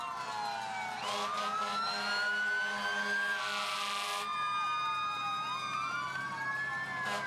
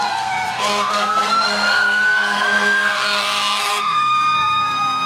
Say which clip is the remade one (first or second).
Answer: second